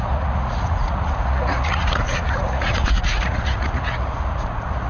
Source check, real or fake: fake